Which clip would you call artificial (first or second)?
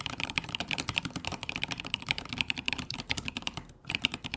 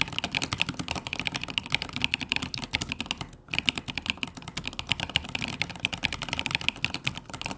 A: first